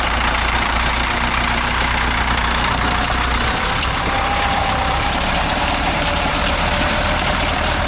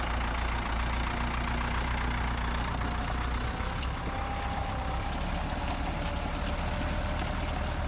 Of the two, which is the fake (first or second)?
first